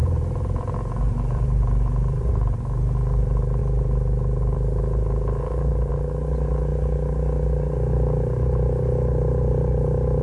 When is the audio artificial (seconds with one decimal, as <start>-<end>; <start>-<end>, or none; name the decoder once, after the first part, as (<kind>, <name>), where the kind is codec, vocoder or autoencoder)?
0.0-2.3 (vocoder, BigVGAN v2); 3.6-5.9